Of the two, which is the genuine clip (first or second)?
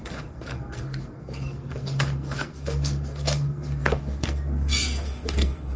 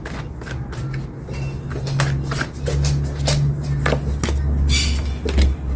second